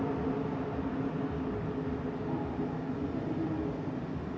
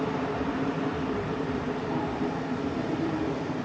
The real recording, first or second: first